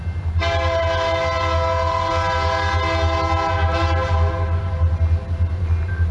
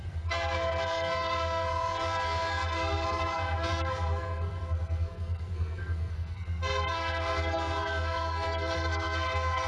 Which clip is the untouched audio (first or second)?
first